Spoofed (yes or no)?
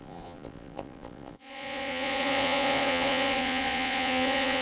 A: yes